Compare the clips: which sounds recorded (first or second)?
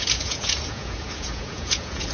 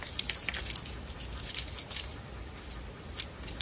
second